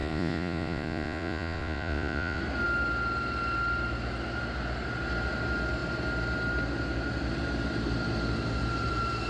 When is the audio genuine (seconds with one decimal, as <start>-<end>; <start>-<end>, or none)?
2.4-9.3